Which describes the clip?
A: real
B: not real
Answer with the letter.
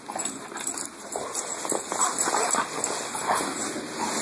A